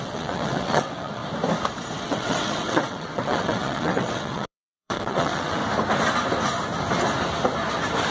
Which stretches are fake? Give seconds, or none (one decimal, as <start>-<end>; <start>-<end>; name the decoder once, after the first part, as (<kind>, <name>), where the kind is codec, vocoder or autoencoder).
0.0-1.2 (vocoder, WaveNeXt); 2.0-5.6